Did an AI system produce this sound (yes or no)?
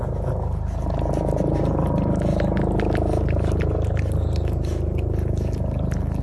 no